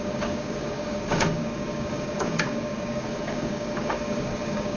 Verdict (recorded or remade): remade